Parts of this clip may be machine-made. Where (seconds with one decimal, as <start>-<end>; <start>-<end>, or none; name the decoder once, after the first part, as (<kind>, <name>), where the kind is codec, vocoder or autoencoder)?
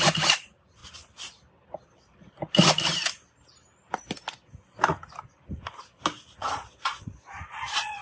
6.4-8.0 (vocoder, Vocos)